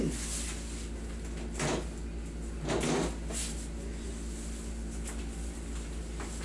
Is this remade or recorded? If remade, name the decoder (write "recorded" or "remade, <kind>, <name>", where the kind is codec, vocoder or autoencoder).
recorded